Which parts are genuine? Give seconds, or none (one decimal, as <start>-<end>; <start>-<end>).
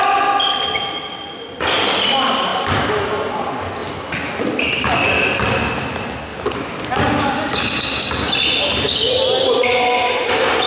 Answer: 0.0-6.3; 7.0-10.7